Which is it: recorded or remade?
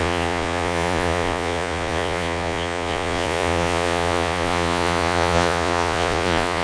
remade